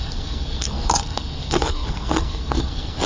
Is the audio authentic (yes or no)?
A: no